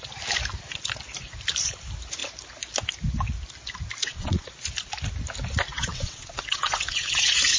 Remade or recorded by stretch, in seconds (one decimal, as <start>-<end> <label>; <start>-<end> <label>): 0.0-4.0 recorded; 4.0-4.5 remade; 4.5-5.7 recorded; 5.7-7.6 remade